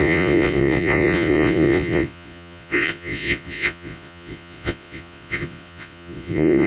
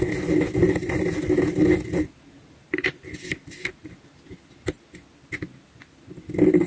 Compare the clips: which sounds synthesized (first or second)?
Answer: first